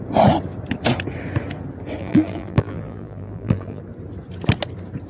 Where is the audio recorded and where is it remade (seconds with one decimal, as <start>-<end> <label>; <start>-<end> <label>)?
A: 0.0-2.0 recorded; 2.0-3.8 remade; 3.8-5.1 recorded